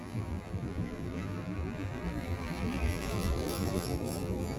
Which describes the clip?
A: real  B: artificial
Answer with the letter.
B